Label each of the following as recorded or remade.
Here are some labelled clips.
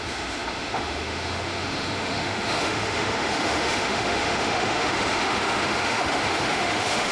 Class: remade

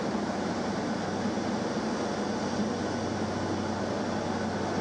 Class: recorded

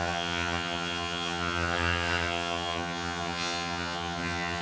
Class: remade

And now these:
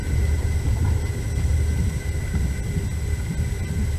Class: recorded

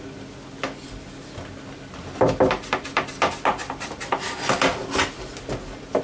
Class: recorded